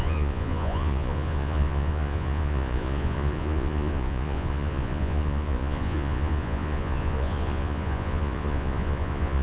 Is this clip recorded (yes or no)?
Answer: no